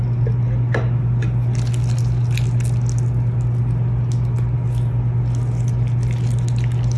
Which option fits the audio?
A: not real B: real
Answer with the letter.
B